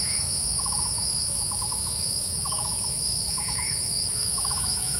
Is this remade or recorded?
remade